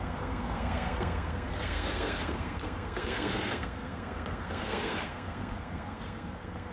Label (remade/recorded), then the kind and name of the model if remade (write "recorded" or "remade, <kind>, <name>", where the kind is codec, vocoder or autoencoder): remade, codec, SNAC